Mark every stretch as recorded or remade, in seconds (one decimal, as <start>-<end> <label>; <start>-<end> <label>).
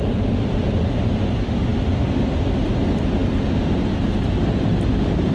0.0-5.3 recorded